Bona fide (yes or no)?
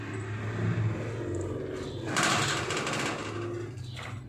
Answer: yes